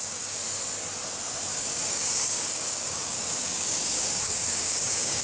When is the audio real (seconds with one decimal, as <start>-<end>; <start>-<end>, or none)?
0.4-1.5